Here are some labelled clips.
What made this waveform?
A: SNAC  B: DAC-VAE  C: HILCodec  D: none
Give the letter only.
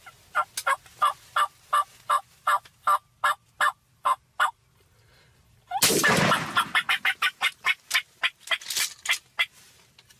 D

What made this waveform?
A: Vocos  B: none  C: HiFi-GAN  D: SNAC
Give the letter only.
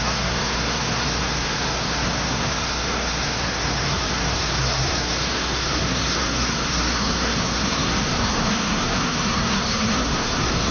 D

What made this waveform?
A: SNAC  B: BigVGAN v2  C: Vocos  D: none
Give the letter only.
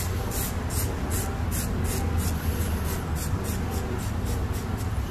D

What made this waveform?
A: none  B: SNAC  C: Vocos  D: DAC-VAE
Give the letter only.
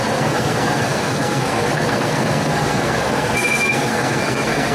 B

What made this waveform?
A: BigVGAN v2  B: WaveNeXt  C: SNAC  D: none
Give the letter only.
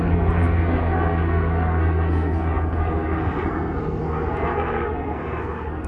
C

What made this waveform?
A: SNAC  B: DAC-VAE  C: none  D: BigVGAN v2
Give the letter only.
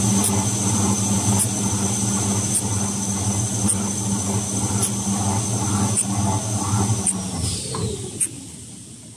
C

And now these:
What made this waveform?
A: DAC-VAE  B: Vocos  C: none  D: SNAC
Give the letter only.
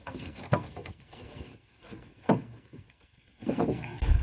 D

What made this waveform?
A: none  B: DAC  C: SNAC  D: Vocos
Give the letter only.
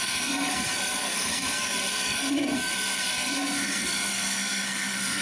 C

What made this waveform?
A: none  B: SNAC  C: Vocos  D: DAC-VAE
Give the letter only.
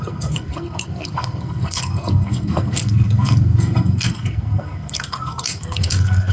B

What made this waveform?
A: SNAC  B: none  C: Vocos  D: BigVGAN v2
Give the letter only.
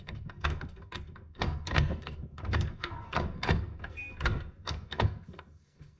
A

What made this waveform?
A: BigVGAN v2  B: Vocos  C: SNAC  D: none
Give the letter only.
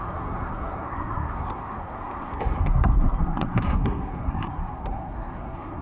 C